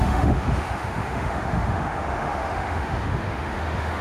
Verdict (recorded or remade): remade